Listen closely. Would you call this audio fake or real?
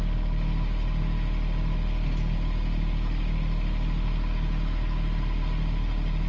real